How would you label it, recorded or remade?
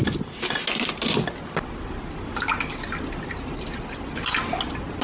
recorded